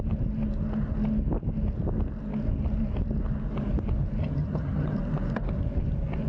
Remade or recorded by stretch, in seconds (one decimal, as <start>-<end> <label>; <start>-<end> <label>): 0.0-4.2 recorded; 4.2-5.0 remade; 5.0-6.3 recorded